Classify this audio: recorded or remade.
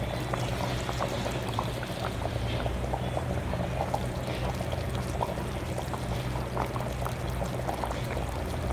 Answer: recorded